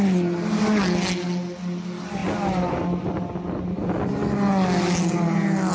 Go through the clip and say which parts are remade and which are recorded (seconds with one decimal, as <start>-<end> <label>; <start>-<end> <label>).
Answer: 0.0-5.7 recorded

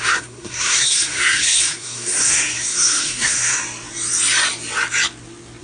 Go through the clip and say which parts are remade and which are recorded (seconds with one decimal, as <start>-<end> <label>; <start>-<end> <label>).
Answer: 0.0-3.6 remade; 3.6-5.6 recorded

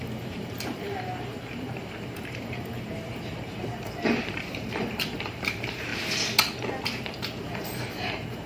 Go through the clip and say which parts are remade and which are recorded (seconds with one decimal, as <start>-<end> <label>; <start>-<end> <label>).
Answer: 0.0-5.9 remade; 5.9-6.8 recorded; 6.8-8.5 remade

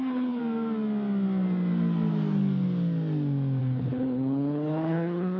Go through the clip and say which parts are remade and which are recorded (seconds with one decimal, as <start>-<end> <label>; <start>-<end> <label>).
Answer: 0.0-0.4 remade; 0.4-3.6 recorded; 3.6-5.4 remade

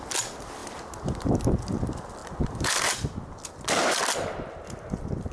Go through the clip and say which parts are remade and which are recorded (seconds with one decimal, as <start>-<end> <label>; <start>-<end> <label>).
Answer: 0.0-2.2 remade; 2.2-3.3 recorded; 3.3-5.3 remade